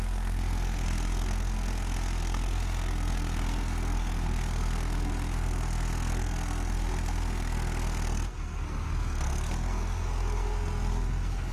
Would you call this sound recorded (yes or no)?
no